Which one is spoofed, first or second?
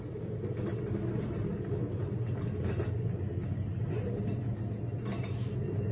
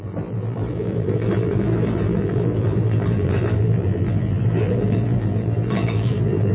second